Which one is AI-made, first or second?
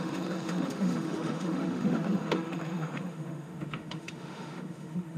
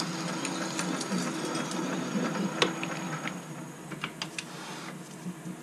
first